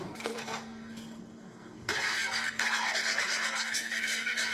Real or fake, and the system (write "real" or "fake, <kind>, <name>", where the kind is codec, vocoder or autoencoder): fake, codec, SNAC